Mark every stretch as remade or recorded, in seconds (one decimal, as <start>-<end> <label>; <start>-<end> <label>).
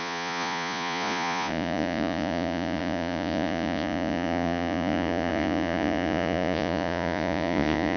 0.0-8.0 remade